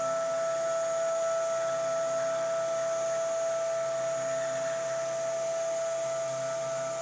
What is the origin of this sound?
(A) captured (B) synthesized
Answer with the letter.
A